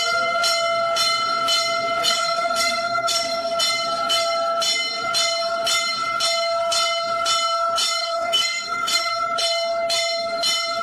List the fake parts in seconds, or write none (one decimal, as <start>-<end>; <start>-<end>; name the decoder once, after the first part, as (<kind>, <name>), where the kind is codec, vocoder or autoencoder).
2.0-3.6 (codec, SNAC); 8.0-9.1